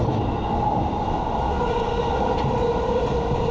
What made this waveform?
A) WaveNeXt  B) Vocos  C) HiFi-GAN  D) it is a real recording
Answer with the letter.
D